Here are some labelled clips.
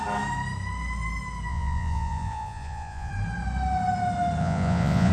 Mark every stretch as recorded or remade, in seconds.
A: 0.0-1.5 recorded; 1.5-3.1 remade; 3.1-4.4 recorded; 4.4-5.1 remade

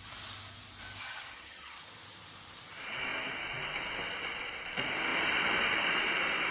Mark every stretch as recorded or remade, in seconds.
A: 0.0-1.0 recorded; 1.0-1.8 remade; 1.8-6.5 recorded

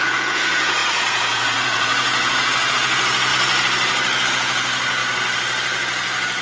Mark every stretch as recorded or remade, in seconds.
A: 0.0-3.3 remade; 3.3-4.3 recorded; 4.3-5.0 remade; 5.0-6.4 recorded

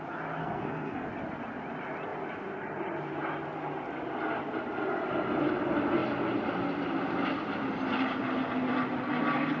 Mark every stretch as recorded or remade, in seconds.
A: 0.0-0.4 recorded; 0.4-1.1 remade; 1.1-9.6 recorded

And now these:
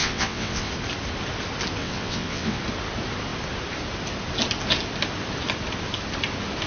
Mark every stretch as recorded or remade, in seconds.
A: 0.0-0.7 remade; 0.7-1.8 recorded; 1.8-2.6 remade; 2.6-6.7 recorded